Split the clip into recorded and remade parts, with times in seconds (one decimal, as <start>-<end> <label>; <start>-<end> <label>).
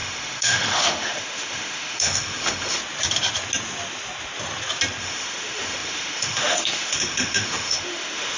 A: 0.0-2.8 remade; 2.8-5.0 recorded; 5.0-8.4 remade